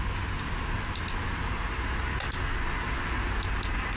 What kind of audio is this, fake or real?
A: real